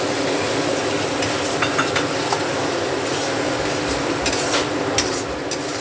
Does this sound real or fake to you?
real